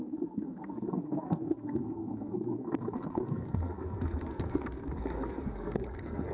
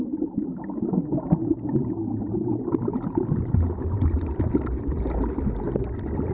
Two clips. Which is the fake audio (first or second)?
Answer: first